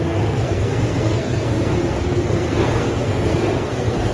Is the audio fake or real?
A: fake